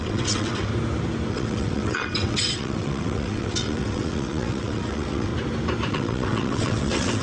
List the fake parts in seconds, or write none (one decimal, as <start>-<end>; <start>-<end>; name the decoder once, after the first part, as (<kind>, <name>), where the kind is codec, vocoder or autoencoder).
0.0-0.7 (vocoder, WaveNeXt); 1.3-5.3; 5.9-7.2